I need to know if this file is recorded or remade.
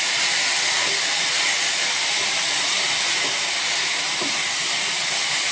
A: recorded